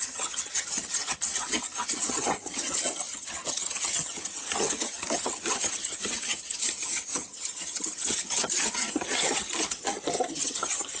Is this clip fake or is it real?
fake